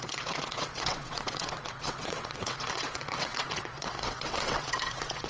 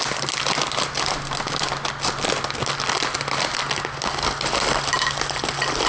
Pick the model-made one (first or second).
first